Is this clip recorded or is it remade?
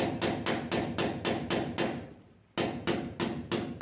recorded